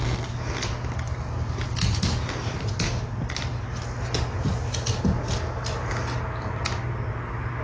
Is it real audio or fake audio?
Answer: real